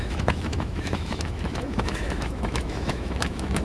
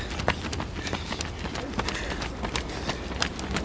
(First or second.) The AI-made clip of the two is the first